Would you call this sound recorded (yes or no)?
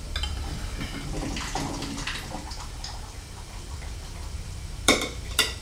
no